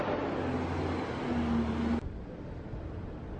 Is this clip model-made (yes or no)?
no